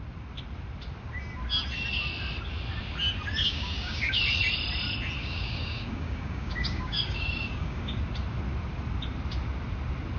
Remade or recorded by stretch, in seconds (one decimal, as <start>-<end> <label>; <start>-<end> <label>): 0.0-3.4 recorded; 3.4-4.2 remade; 4.2-5.2 recorded; 5.2-8.0 remade; 8.0-10.2 recorded